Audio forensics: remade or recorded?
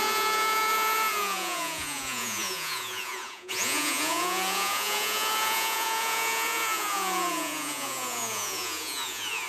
remade